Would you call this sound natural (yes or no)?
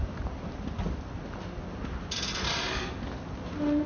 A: yes